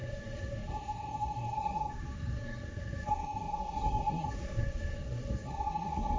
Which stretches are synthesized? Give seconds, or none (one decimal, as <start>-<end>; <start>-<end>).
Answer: 0.0-6.2